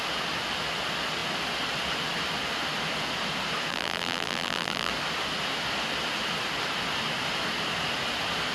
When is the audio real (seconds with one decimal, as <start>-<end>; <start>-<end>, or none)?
0.0-3.7; 4.9-8.5